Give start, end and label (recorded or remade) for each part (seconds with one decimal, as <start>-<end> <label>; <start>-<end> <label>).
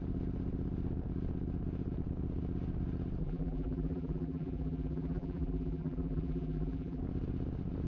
0.0-3.2 recorded; 3.2-7.0 remade; 7.0-7.9 recorded